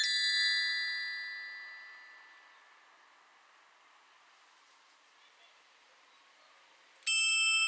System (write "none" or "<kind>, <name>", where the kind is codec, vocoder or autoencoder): none